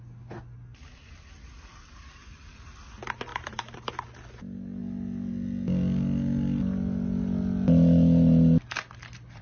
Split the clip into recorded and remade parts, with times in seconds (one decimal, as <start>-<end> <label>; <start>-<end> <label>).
0.0-3.3 recorded; 3.3-3.9 remade; 3.9-9.4 recorded